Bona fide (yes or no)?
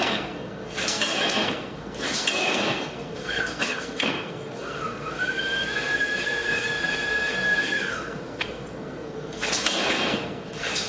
no